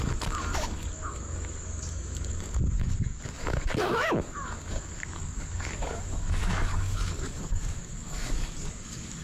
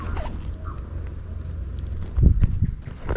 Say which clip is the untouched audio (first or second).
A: second